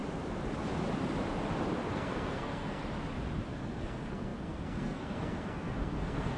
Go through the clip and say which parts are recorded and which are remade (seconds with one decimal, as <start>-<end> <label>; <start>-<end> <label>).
0.0-1.9 recorded; 1.9-2.8 remade; 2.8-3.5 recorded; 3.5-6.4 remade